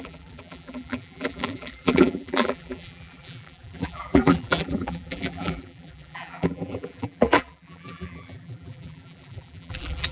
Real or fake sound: fake